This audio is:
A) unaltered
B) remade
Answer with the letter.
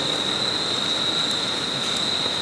A